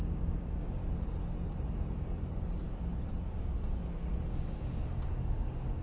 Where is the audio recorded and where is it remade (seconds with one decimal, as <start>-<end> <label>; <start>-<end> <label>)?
0.0-0.8 remade; 0.8-4.3 recorded; 4.3-5.8 remade